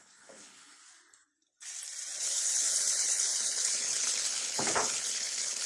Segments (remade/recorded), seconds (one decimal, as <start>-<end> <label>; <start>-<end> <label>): 0.0-0.8 remade; 0.8-2.2 recorded; 2.2-5.7 remade